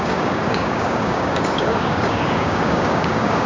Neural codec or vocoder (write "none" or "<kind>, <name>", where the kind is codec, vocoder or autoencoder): codec, DAC